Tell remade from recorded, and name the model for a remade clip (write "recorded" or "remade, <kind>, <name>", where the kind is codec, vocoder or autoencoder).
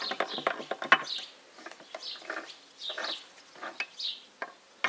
recorded